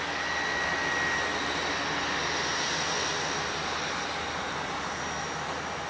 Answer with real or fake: real